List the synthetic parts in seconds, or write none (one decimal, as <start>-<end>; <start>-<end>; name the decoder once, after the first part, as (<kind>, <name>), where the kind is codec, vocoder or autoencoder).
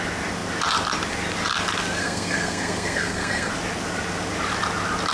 2.0-3.5 (codec, SNAC)